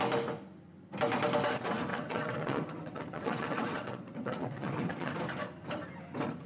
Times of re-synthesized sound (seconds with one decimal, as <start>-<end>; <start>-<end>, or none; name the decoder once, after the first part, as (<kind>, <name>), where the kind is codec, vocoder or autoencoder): 1.9-5.1 (vocoder, WaveNeXt)